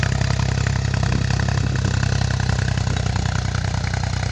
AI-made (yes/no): no